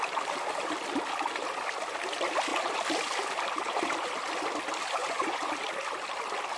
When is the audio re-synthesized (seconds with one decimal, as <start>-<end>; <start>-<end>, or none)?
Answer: 5.0-5.5